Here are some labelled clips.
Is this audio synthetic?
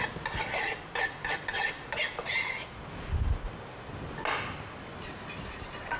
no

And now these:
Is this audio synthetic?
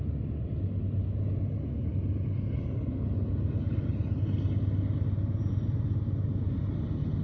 no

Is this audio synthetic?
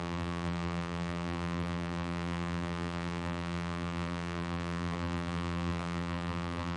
yes